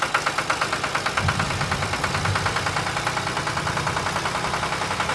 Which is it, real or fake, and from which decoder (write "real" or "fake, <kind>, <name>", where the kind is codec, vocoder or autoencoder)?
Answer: real